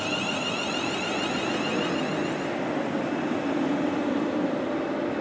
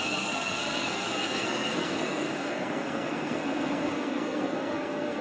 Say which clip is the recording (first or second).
first